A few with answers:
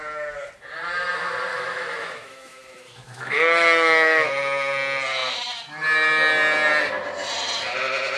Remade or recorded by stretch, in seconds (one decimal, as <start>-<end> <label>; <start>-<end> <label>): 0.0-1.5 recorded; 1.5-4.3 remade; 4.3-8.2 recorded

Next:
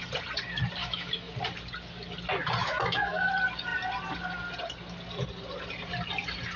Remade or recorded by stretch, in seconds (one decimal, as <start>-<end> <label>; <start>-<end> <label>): 0.0-0.8 recorded; 0.8-1.3 remade; 1.3-2.6 recorded; 2.6-3.3 remade; 3.3-6.6 recorded

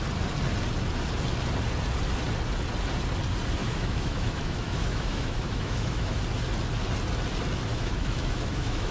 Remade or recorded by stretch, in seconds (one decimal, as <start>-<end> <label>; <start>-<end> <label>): 0.0-3.6 recorded; 3.6-6.2 remade; 6.2-7.7 recorded; 7.7-8.9 remade